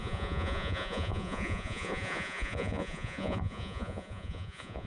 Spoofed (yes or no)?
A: yes